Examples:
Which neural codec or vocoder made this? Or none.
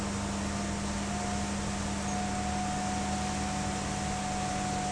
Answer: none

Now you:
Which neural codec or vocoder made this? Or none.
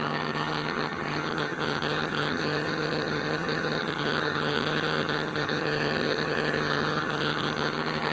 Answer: vocoder, HiFi-GAN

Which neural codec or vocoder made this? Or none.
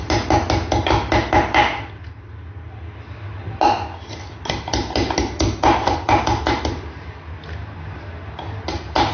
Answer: none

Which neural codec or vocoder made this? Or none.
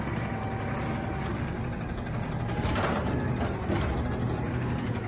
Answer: none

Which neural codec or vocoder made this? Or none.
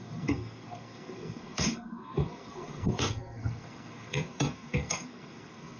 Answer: codec, SNAC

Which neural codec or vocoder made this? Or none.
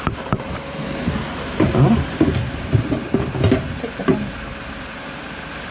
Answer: vocoder, BigVGAN v2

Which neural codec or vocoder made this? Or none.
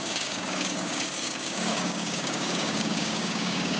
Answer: codec, DAC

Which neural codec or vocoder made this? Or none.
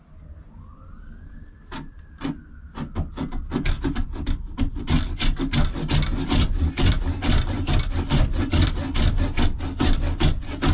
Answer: none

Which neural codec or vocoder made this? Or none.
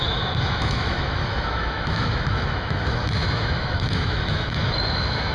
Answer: autoencoder, DAC-VAE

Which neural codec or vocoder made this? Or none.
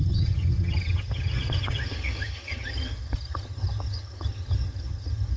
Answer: vocoder, HiFi-GAN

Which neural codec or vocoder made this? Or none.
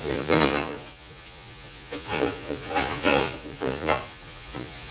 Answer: vocoder, Vocos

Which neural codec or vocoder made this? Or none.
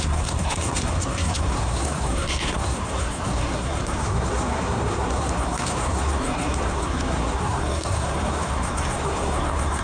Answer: codec, SNAC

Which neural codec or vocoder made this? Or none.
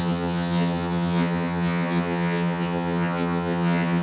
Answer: vocoder, HiFi-GAN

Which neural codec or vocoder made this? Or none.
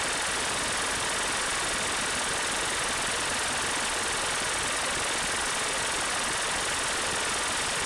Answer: none